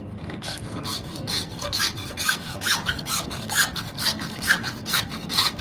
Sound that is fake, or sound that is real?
fake